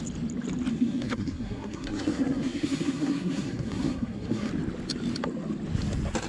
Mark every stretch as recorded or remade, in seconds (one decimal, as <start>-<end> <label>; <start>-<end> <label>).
0.0-0.7 recorded; 0.7-4.5 remade; 4.5-6.3 recorded